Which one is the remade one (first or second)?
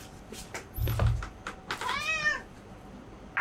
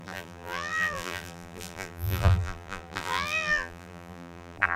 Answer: second